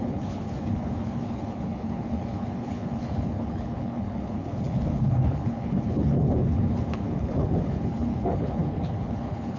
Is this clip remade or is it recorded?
remade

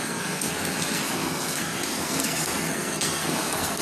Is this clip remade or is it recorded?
remade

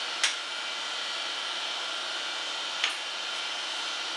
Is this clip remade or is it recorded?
recorded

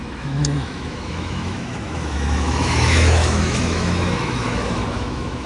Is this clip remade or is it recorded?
remade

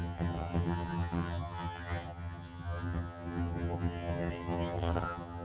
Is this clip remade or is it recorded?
remade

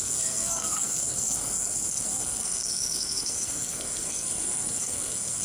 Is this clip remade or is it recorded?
remade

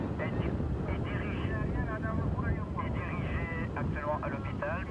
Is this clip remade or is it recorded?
recorded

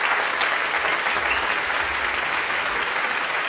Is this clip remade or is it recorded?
recorded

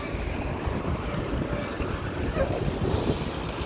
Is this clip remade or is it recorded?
recorded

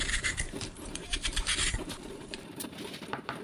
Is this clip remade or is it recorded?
remade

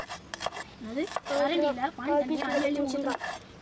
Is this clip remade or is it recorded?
recorded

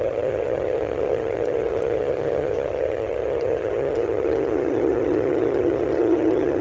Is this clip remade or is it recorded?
remade